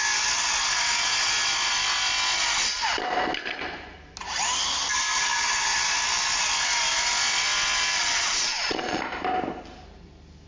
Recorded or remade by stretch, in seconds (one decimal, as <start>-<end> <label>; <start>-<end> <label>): 0.0-8.0 recorded; 8.0-9.0 remade; 9.0-10.5 recorded

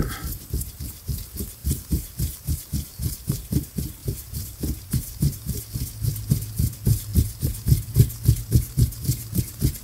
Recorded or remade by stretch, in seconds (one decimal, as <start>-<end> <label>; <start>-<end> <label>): 0.0-1.6 recorded; 1.6-3.5 remade; 3.5-4.0 recorded; 4.0-5.6 remade; 5.6-9.8 recorded

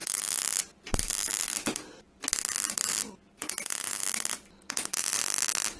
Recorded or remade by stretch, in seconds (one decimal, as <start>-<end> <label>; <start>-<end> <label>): 0.0-5.8 recorded

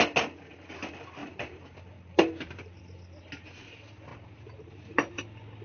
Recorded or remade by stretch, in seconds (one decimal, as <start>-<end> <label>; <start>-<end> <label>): 0.0-1.2 recorded; 1.2-2.8 remade; 2.8-4.1 recorded; 4.1-5.1 remade; 5.1-5.6 recorded

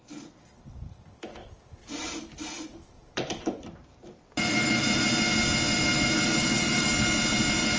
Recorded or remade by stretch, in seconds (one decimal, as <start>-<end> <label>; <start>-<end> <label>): 0.0-2.7 recorded; 2.7-4.2 remade; 4.2-6.2 recorded; 6.2-6.9 remade; 6.9-7.8 recorded

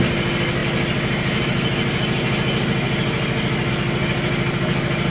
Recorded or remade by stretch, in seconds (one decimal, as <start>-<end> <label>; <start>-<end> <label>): 0.0-5.1 recorded

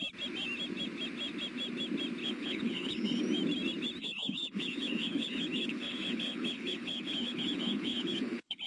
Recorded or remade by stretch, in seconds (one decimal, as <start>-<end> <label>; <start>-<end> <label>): 0.0-2.2 recorded; 2.2-3.2 remade; 3.2-4.0 recorded; 4.0-8.7 remade

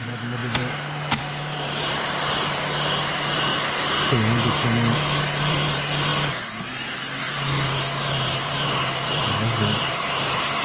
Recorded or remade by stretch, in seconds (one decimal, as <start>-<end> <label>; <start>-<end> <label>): 0.0-3.5 remade; 3.5-5.2 recorded; 5.2-6.1 remade; 6.1-7.2 recorded; 7.2-10.6 remade